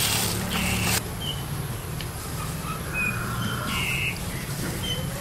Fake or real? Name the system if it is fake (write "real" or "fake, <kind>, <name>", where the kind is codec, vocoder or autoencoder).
fake, vocoder, BigVGAN v2